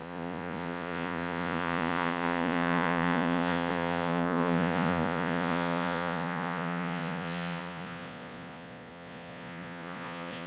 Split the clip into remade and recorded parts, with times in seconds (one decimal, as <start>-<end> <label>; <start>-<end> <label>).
0.0-10.5 remade